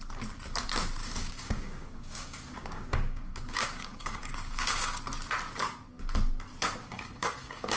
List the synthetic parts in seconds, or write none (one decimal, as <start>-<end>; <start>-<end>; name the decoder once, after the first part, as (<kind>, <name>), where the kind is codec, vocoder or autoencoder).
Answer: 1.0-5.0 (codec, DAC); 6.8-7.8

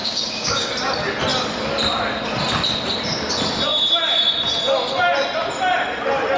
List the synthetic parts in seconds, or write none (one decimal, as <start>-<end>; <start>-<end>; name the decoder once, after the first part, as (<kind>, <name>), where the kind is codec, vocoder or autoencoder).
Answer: 0.0-0.7 (codec, DAC)

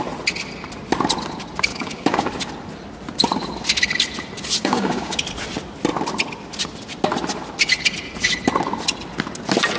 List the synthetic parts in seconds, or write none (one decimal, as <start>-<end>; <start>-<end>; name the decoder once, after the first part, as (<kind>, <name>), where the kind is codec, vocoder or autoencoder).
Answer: 1.7-2.3 (codec, DAC); 4.6-5.2

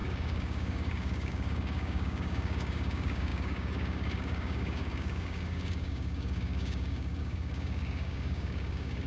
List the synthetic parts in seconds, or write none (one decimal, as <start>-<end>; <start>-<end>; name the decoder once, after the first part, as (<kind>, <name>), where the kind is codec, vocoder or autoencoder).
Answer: 0.0-9.1 (codec, DAC)

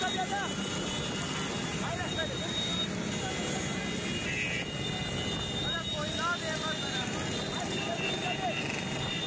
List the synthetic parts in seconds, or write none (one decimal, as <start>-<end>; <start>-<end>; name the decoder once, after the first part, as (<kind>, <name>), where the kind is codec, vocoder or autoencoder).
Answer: none

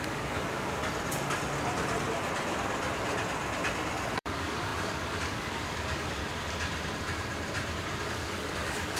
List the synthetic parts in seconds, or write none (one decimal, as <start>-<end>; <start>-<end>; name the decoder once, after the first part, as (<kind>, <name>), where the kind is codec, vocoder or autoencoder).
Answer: 0.0-0.8 (codec, DAC); 4.1-6.2; 8.0-9.0

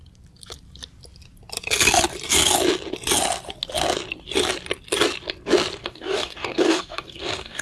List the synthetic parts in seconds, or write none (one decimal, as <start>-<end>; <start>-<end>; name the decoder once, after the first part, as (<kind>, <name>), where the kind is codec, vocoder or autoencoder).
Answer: 5.8-7.6 (codec, DAC)

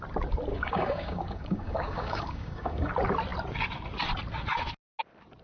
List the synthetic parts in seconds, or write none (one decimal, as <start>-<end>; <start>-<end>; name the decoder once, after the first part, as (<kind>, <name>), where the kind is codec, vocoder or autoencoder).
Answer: 0.5-2.9 (codec, DAC)